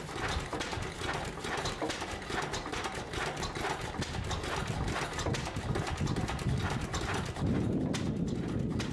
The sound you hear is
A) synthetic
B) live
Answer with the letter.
B